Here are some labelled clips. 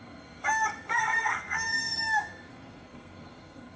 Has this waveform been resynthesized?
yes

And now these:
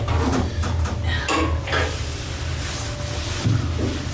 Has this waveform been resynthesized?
no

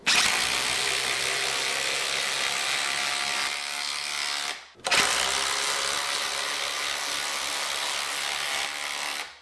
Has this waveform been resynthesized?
no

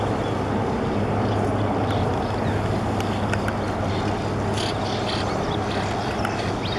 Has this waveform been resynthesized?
no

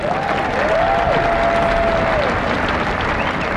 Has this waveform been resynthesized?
no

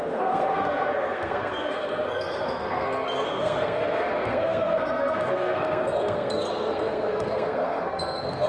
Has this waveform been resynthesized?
yes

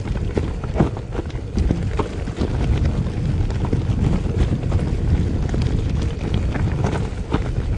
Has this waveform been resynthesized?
no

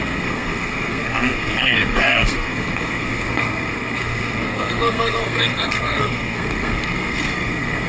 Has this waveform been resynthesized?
yes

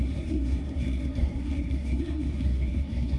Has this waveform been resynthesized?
yes